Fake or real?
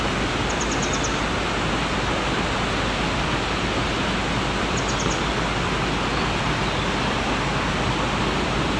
real